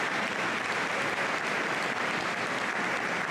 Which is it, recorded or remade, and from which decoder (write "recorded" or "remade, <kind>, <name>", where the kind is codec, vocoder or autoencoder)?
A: recorded